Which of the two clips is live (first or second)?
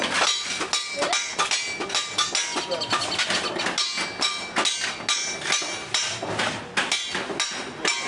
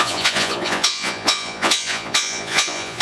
first